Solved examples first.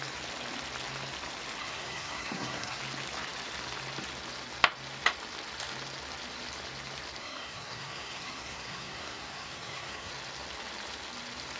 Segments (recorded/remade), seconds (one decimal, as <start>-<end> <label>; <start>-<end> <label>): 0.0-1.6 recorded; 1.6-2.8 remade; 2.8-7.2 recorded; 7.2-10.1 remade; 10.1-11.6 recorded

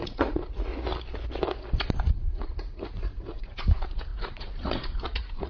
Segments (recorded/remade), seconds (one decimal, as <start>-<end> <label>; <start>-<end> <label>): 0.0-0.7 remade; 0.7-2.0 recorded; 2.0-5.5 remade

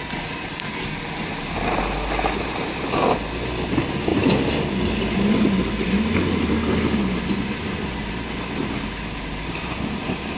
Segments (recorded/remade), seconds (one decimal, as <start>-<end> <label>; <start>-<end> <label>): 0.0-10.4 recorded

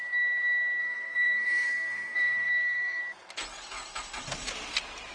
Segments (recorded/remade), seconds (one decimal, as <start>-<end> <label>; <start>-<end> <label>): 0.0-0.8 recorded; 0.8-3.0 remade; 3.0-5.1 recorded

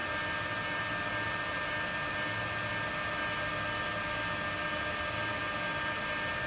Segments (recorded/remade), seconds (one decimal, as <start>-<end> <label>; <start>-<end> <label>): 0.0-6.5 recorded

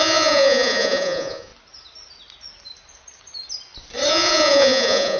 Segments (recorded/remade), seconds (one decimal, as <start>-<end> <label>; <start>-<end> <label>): 0.0-1.5 remade; 1.5-4.1 recorded; 4.1-5.2 remade

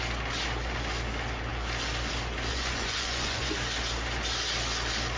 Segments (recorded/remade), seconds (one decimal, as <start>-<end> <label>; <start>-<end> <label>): 0.0-2.5 recorded; 2.5-3.5 remade; 3.5-5.2 recorded